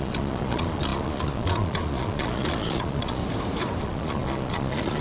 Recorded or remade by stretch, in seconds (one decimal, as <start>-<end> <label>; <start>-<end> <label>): 0.0-3.2 remade; 3.2-3.8 recorded; 3.8-5.0 remade